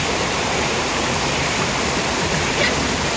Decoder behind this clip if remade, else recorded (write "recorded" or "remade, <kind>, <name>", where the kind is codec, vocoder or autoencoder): recorded